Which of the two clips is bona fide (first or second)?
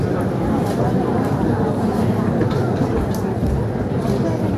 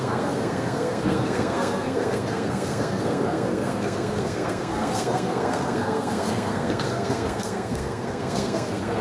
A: first